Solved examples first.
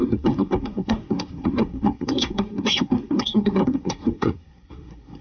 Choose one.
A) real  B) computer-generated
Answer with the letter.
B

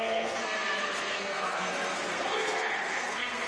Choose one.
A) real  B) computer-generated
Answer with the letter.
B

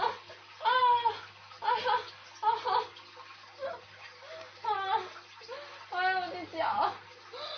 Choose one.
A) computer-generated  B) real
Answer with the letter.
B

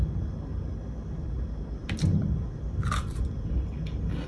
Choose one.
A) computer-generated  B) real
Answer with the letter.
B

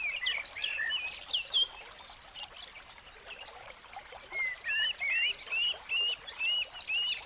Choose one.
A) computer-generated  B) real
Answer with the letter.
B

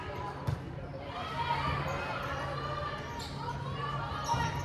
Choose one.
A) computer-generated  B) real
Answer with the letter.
B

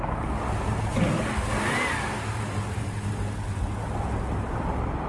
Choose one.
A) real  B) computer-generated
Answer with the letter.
A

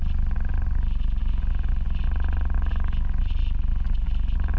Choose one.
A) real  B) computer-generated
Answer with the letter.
A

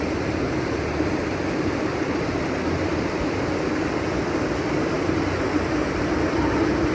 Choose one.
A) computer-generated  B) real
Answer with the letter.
B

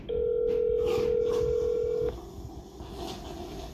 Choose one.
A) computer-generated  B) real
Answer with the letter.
B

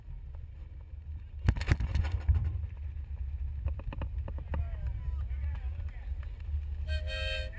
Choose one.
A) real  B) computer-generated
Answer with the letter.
A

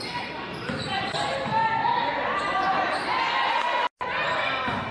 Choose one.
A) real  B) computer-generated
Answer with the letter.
A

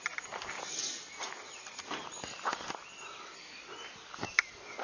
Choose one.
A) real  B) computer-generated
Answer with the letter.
A